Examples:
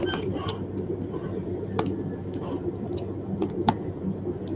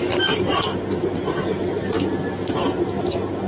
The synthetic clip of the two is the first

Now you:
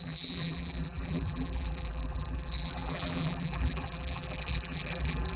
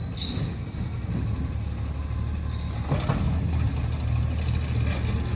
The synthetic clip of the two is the first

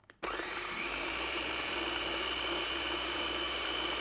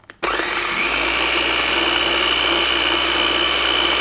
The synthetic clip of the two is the first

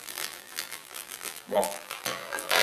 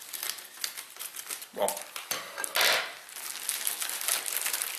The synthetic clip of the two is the first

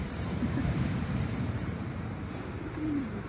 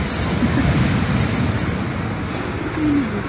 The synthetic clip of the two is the first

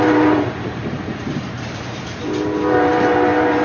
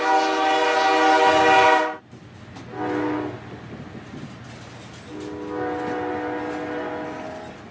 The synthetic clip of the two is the first